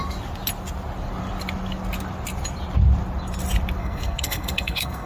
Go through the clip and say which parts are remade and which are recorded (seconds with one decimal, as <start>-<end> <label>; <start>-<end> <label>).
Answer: 0.0-3.8 recorded; 3.8-5.1 remade